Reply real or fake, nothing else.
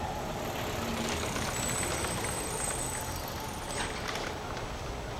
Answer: real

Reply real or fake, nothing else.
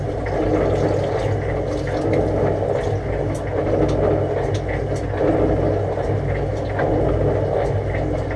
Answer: real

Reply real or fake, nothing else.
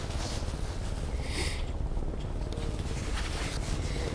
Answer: real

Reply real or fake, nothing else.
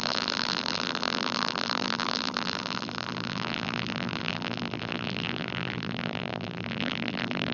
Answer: fake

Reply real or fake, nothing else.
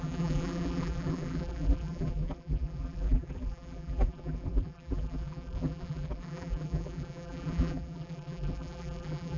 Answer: fake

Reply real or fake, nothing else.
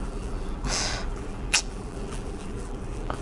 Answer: fake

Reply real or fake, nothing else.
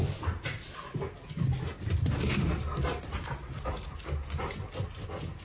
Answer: real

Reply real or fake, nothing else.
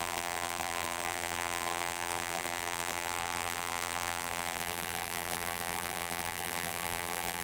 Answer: fake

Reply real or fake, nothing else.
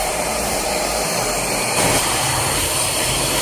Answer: fake